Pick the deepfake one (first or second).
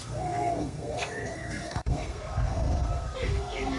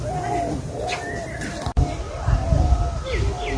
first